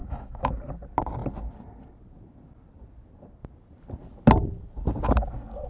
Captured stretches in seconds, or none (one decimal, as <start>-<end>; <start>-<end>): 0.6-5.7